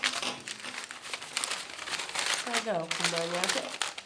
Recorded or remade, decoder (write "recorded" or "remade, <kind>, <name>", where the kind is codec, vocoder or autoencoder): recorded